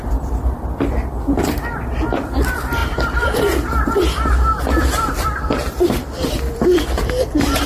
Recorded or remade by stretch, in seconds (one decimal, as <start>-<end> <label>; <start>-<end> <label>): 0.0-7.7 remade